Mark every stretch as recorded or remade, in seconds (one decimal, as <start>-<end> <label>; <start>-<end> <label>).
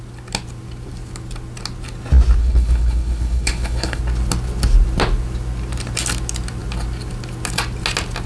0.0-2.4 recorded; 2.4-4.0 remade; 4.0-8.3 recorded